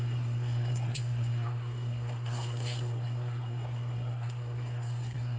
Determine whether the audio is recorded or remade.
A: remade